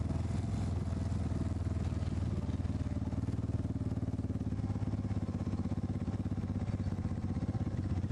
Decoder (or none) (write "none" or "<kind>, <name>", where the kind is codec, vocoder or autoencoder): none